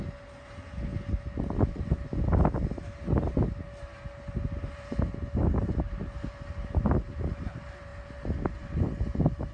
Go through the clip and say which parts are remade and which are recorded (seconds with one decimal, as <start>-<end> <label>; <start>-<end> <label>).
0.0-9.5 recorded